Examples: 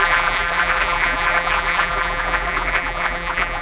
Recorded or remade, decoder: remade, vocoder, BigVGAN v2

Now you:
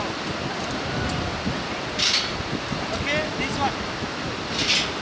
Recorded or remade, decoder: recorded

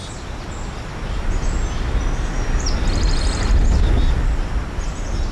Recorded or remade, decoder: recorded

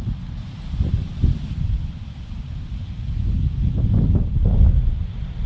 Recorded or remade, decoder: recorded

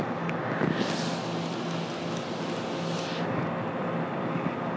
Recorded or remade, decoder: recorded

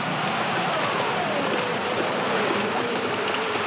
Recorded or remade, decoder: recorded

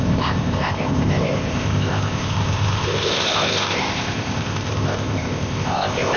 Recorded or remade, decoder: remade, codec, ZipCodec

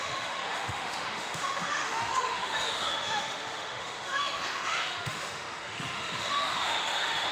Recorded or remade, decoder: remade, autoencoder, DAC-VAE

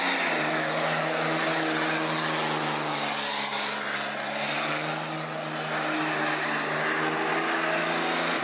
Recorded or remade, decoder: recorded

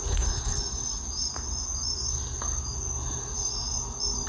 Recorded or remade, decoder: recorded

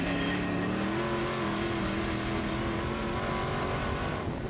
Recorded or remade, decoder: recorded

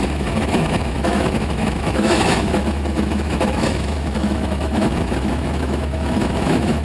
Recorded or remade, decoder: remade, autoencoder, DAC-VAE